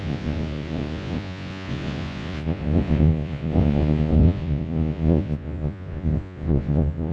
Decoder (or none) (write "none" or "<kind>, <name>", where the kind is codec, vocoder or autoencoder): vocoder, Vocos